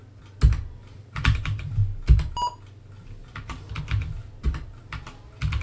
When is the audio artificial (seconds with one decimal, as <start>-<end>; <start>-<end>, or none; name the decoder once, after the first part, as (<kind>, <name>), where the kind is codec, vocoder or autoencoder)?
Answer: 0.8-1.7 (vocoder, BigVGAN v2); 3.2-3.8; 4.2-4.8